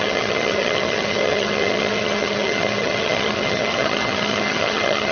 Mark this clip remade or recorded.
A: remade